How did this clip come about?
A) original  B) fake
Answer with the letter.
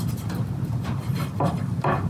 A